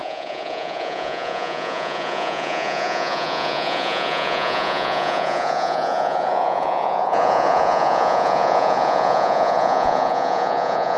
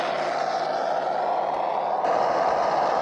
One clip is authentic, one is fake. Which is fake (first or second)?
first